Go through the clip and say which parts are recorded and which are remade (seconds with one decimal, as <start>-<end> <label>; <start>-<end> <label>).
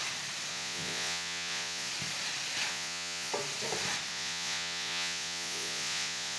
0.0-0.5 recorded; 0.5-1.9 remade; 1.9-2.7 recorded; 2.7-3.3 remade; 3.3-4.1 recorded; 4.1-6.4 remade